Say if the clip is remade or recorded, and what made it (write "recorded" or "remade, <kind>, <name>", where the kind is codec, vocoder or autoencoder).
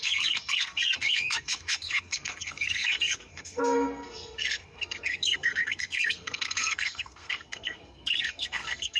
remade, codec, SNAC